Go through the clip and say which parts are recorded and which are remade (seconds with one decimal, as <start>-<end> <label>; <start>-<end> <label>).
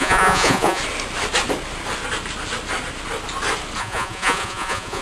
0.0-0.8 remade; 0.8-3.8 recorded; 3.8-5.0 remade